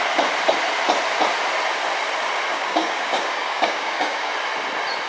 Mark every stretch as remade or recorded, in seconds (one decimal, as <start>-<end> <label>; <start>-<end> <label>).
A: 0.0-2.5 recorded; 2.5-4.3 remade; 4.3-5.1 recorded